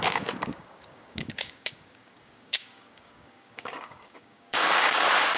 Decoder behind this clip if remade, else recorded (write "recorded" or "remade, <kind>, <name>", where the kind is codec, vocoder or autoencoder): remade, codec, DAC